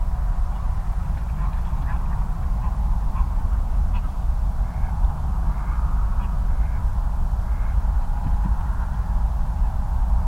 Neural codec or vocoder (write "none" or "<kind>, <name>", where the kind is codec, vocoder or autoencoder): none